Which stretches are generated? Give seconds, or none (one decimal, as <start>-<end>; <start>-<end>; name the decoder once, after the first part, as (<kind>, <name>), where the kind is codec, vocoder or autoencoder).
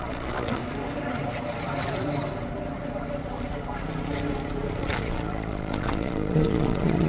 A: 0.0-0.6 (vocoder, Vocos); 4.8-7.1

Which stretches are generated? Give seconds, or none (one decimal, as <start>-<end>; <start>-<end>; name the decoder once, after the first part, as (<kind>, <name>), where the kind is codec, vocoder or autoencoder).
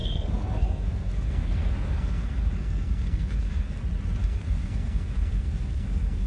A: 0.0-3.8 (codec, SNAC); 4.2-6.3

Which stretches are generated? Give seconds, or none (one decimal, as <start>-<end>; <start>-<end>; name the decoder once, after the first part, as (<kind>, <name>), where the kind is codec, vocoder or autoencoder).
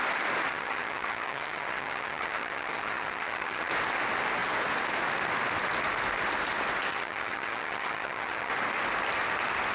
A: 0.5-3.7 (vocoder, HiFi-GAN); 6.9-8.5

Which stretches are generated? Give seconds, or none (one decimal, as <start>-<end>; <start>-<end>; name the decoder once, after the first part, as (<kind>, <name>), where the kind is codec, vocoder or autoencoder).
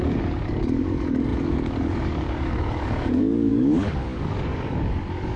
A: 0.0-5.4 (codec, DAC)